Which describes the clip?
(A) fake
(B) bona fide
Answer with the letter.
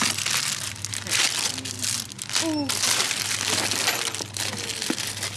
B